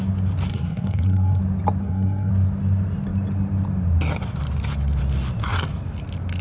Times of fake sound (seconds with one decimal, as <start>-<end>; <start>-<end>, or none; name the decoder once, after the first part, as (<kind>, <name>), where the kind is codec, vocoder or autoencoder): 0.5-1.4 (codec, SNAC); 1.8-2.3

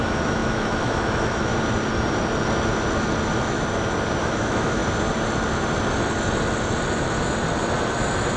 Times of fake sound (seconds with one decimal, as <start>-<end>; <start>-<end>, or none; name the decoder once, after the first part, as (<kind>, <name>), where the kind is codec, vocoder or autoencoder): 0.0-1.5 (autoencoder, DAC-VAE); 4.2-4.8

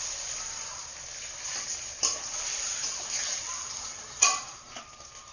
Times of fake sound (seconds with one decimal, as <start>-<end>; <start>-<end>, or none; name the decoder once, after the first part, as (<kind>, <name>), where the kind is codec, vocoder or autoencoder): 3.2-4.8 (vocoder, Vocos)

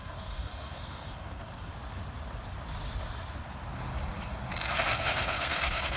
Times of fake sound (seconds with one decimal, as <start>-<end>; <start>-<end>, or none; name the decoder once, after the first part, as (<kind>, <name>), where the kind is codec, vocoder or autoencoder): 0.0-1.7 (codec, SNAC); 4.9-6.0

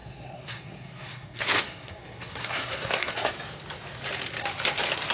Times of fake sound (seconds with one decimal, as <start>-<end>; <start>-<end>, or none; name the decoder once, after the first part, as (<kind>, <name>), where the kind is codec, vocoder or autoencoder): 0.0-3.1 (codec, SNAC)